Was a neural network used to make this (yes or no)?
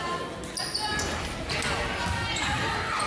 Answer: no